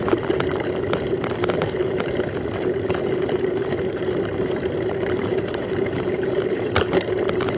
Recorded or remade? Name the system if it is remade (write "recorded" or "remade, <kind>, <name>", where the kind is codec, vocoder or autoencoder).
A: remade, vocoder, BigVGAN v2